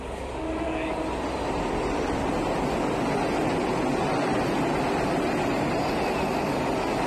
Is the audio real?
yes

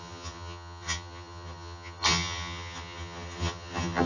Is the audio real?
no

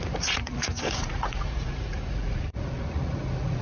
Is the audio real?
no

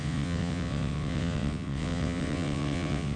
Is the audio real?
no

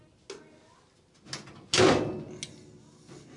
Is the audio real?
yes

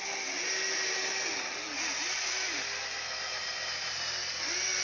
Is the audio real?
yes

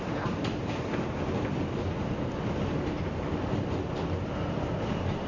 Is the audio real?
yes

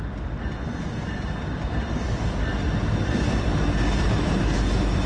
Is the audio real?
yes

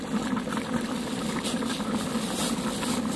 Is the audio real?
yes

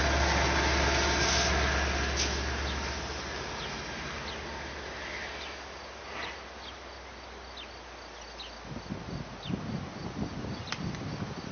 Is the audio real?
yes